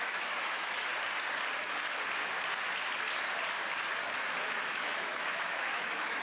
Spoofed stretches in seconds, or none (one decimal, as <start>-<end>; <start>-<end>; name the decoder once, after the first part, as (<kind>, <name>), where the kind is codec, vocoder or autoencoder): 0.0-0.9 (autoencoder, DAC-VAE); 4.4-6.2